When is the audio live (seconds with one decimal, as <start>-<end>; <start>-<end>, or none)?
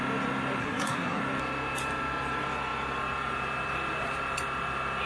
0.0-0.6; 1.2-5.1